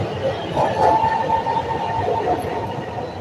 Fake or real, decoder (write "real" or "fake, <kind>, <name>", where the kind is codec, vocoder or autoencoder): real